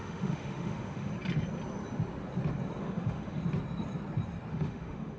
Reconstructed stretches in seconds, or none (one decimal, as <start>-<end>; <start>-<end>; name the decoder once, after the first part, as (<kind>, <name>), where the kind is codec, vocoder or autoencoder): 0.0-1.1 (autoencoder, DAC-VAE); 2.8-3.4; 4.5-5.2